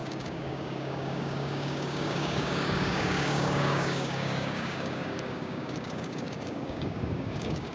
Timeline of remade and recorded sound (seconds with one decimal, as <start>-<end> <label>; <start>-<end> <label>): 0.0-7.7 remade